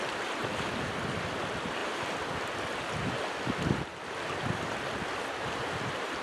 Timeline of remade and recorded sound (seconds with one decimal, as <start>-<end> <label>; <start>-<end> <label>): 0.0-6.2 recorded